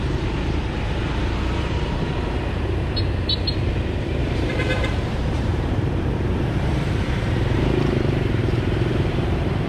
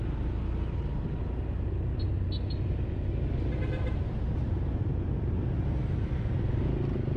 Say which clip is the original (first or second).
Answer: second